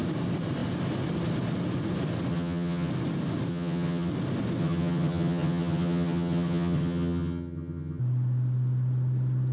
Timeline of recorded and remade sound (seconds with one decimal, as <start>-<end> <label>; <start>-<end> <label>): 0.0-2.3 recorded; 2.3-2.9 remade; 2.9-3.5 recorded; 3.5-4.1 remade; 4.1-4.6 recorded; 4.6-8.0 remade; 8.0-9.5 recorded